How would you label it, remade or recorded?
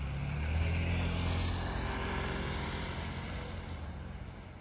recorded